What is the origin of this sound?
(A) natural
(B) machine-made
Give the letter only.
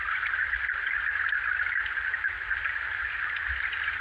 A